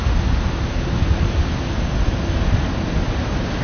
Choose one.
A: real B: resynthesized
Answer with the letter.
A